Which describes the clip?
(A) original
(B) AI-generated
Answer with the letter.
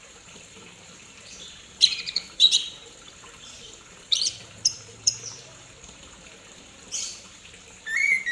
B